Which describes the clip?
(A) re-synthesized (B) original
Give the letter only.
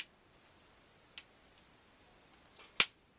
B